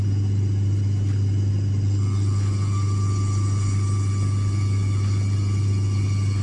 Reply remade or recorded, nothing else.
recorded